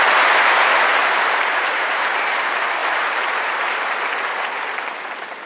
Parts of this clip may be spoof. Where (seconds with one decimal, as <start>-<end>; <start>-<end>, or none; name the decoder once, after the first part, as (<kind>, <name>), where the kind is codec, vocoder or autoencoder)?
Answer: 1.0-2.2 (vocoder, BigVGAN v2); 2.8-3.9